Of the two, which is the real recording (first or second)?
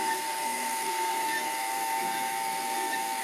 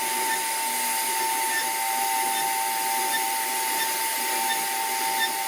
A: second